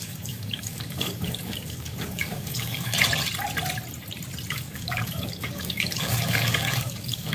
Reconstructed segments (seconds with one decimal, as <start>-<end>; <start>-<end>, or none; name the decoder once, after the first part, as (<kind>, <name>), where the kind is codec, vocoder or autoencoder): 0.0-3.0 (codec, DAC); 4.5-7.3